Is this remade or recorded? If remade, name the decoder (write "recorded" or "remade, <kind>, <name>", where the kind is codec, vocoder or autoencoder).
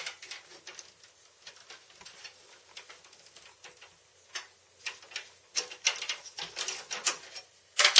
recorded